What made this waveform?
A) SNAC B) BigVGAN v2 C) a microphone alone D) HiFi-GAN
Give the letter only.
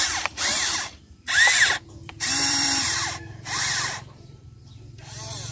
B